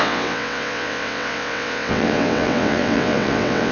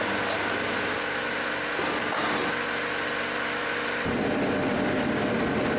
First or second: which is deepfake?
first